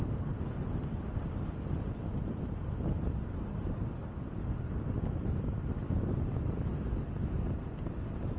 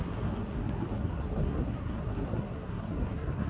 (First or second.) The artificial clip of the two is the second